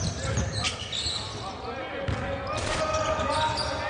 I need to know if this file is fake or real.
real